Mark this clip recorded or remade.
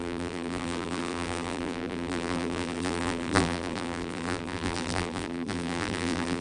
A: remade